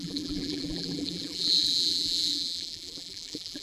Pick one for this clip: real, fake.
fake